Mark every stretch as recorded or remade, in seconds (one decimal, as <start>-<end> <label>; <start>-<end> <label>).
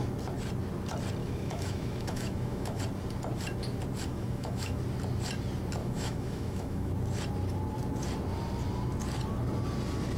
0.0-1.2 recorded; 1.2-2.8 remade; 2.8-4.1 recorded; 4.1-4.8 remade; 4.8-5.8 recorded; 5.8-6.9 remade; 6.9-10.2 recorded